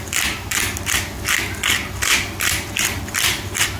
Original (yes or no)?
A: no